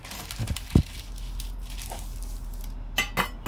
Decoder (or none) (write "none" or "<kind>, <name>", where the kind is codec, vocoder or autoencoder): none